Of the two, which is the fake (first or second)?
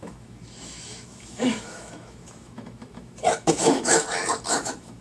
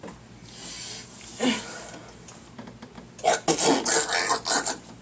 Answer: first